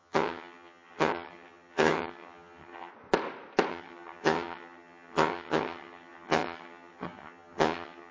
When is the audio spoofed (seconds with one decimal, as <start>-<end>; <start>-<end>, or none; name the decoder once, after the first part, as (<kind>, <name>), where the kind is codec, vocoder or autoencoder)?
0.0-2.9 (vocoder, HiFi-GAN); 3.7-8.1